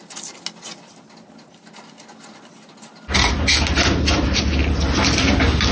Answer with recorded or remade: recorded